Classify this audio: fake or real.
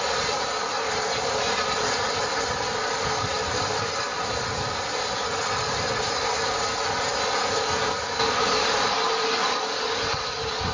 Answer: real